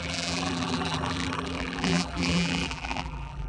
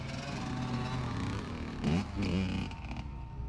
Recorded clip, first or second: second